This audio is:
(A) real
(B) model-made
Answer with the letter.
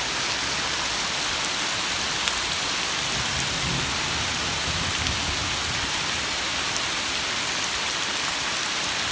A